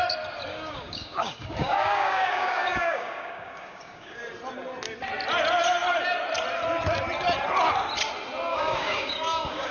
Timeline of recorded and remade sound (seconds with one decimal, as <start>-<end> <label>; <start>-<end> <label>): 0.0-0.5 recorded; 0.5-4.2 remade; 4.2-8.5 recorded; 8.5-9.7 remade